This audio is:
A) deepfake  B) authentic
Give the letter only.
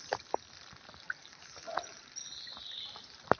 B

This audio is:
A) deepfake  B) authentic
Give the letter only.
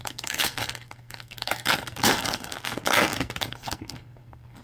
A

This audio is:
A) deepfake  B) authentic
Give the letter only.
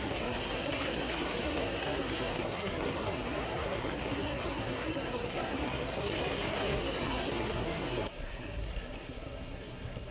A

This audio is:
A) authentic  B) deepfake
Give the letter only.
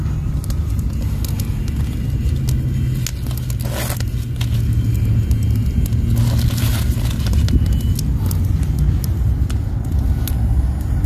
A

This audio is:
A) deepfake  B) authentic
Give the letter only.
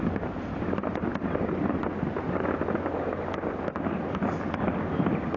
B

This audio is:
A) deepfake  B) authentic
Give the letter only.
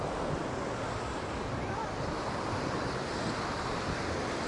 B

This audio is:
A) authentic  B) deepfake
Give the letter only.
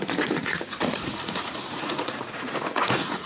B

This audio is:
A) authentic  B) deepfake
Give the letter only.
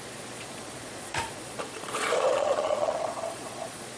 B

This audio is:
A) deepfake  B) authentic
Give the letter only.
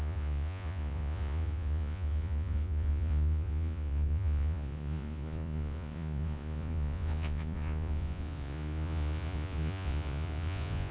A